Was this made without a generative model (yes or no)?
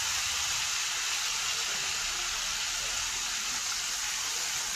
yes